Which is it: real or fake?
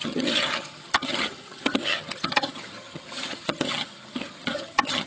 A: fake